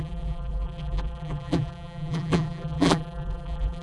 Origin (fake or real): fake